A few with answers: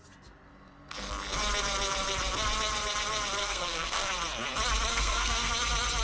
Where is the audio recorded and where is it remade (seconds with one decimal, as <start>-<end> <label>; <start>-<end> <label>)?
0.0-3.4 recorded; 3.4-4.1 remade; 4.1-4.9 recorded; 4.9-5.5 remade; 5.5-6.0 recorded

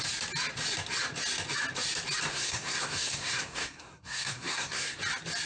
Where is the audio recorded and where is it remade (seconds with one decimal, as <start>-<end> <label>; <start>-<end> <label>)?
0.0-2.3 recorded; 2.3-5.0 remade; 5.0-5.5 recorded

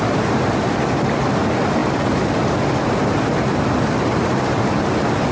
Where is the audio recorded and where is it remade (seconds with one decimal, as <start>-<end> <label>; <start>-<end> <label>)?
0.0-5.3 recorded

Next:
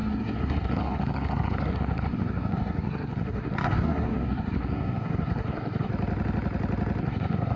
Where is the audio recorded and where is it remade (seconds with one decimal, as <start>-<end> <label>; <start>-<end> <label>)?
0.0-5.9 remade; 5.9-7.0 recorded; 7.0-7.6 remade

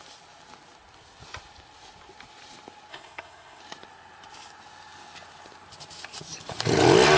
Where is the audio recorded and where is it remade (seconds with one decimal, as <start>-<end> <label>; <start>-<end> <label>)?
0.0-2.9 recorded; 2.9-3.6 remade; 3.6-7.2 recorded